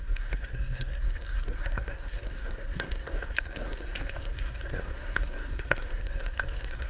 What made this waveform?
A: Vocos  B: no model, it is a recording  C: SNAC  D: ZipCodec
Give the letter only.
C